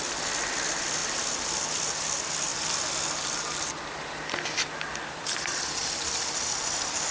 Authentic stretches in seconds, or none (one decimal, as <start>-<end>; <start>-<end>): 0.0-2.5